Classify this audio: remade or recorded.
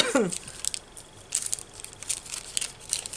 recorded